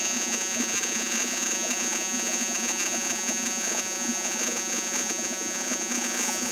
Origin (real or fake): fake